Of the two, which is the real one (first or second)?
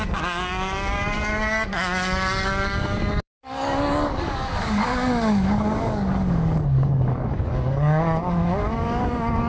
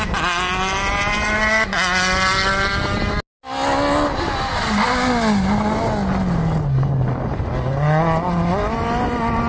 second